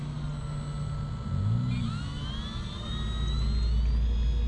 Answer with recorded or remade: recorded